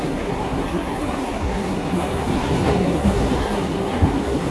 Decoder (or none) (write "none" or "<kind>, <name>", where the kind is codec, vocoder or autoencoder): codec, SNAC